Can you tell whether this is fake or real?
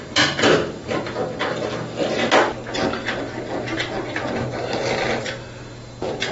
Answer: real